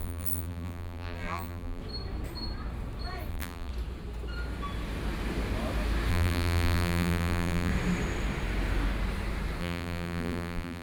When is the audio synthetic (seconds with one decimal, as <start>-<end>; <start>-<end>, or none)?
0.0-1.8; 3.3-3.7; 6.1-7.7; 9.6-10.8